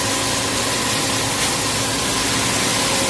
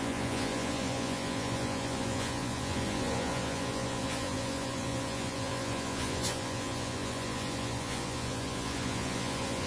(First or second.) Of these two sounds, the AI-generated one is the second